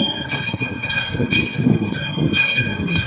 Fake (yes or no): yes